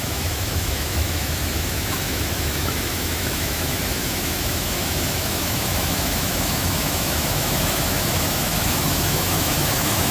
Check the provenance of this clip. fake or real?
fake